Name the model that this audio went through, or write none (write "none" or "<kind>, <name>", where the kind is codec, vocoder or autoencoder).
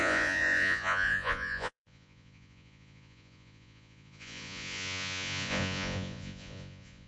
vocoder, Vocos